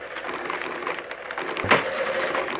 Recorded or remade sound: recorded